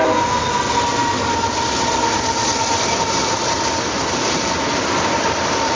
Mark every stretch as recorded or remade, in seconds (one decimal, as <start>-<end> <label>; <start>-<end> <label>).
0.0-2.7 recorded; 2.7-5.8 remade